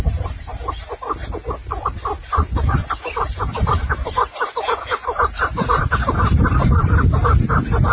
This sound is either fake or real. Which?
real